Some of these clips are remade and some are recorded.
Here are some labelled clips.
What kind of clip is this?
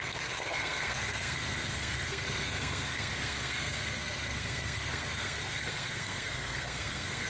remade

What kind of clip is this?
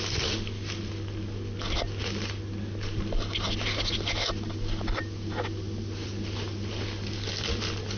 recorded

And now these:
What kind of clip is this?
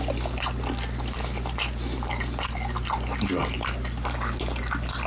recorded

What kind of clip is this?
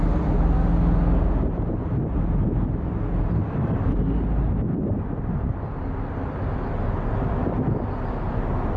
recorded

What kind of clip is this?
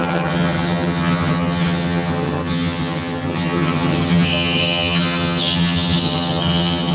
remade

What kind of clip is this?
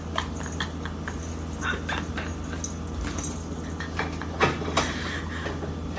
recorded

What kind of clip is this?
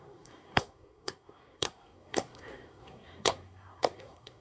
remade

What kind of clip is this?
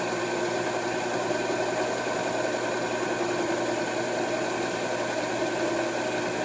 recorded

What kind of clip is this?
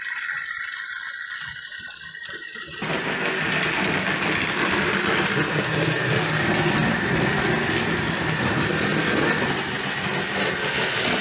recorded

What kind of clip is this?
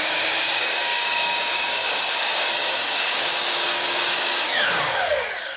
remade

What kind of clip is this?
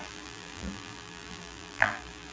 remade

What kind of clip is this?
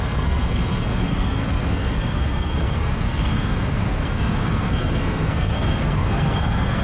remade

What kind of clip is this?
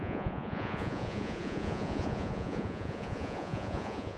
remade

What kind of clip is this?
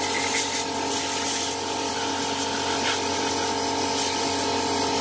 recorded